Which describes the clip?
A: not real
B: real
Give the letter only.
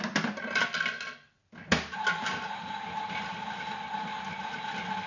B